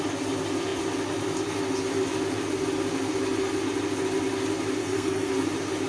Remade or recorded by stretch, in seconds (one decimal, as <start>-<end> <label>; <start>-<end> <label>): 0.0-4.8 recorded; 4.8-5.3 remade; 5.3-5.9 recorded